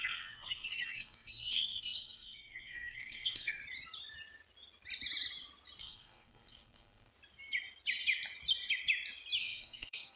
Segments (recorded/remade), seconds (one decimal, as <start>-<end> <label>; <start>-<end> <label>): 0.0-3.6 remade; 3.6-5.8 recorded; 5.8-7.1 remade; 7.1-9.4 recorded; 9.4-10.2 remade